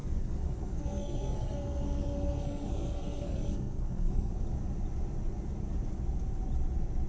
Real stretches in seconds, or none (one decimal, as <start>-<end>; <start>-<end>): 4.3-7.1